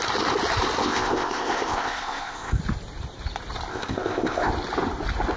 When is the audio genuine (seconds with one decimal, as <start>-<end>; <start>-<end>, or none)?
0.0-0.8; 2.6-3.7; 4.5-5.4